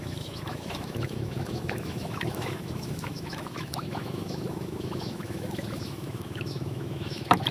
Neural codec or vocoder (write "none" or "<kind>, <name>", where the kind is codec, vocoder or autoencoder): autoencoder, DAC-VAE